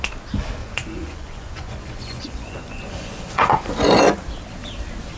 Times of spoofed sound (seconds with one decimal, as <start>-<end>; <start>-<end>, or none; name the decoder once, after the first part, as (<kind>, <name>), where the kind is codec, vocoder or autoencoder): 0.6-3.7 (vocoder, Vocos)